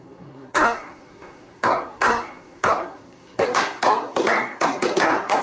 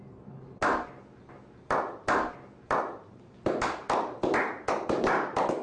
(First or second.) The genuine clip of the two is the second